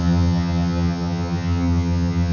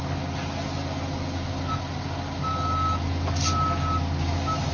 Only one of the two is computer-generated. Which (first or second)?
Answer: first